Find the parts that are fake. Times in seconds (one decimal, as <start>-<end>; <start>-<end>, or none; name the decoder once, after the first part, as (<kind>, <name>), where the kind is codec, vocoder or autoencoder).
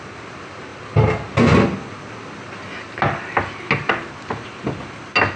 none